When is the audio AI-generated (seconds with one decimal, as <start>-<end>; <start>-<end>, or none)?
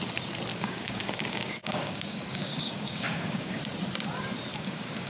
0.5-3.6; 4.5-5.1